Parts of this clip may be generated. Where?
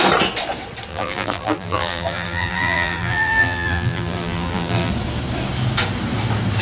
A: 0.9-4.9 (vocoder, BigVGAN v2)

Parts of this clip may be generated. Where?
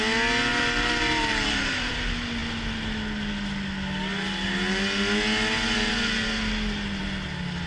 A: 0.5-1.9 (vocoder, BigVGAN v2)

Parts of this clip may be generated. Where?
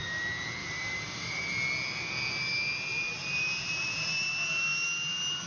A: 0.6-1.4 (vocoder, BigVGAN v2); 2.9-4.3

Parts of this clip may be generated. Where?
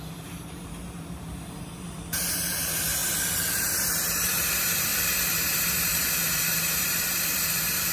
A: 0.0-3.0 (vocoder, BigVGAN v2); 3.5-4.9; 5.5-7.9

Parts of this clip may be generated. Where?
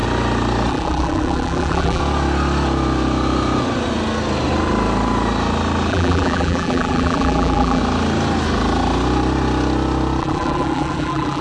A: 0.7-2.0 (vocoder, BigVGAN v2); 5.9-7.8; 10.2-11.4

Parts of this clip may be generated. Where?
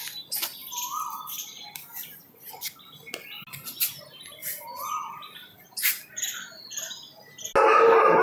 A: 0.6-2.5 (vocoder, BigVGAN v2)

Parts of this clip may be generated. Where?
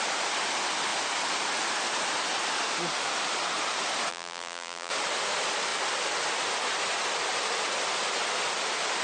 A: 4.1-4.9 (vocoder, BigVGAN v2)